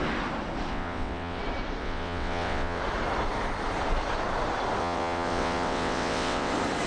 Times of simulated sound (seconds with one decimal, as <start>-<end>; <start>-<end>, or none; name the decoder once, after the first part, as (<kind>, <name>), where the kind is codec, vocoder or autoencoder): 0.7-1.4 (vocoder, WaveNeXt); 1.8-2.8; 4.8-6.5